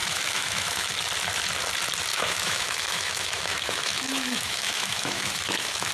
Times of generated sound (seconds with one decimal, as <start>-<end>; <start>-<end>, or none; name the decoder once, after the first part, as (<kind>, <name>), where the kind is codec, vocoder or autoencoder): 0.0-0.9 (autoencoder, DAC-VAE); 2.1-5.9

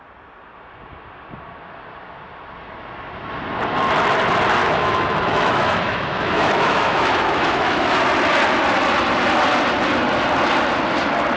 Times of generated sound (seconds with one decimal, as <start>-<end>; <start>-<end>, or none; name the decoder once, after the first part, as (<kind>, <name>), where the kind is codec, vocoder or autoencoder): 4.6-8.0 (autoencoder, DAC-VAE)

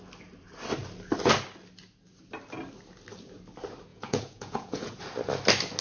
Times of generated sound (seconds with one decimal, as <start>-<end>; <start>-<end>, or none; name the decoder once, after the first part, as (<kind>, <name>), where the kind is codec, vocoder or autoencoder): 3.9-5.0 (vocoder, Vocos)

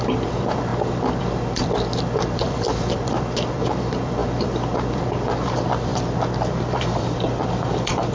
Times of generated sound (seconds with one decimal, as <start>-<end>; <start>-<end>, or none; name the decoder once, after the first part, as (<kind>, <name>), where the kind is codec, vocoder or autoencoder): 0.0-0.7 (vocoder, BigVGAN v2); 1.2-5.9; 6.5-8.1

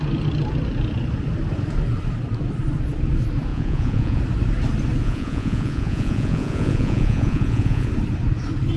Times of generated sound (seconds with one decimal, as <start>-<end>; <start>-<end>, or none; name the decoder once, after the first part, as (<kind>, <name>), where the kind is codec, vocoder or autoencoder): 3.5-4.2 (vocoder, Vocos); 5.0-7.9

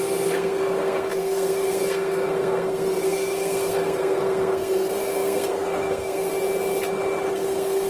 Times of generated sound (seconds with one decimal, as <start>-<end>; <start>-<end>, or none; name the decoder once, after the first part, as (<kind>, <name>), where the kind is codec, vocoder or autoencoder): 0.0-6.3 (codec, SNAC); 7.3-7.9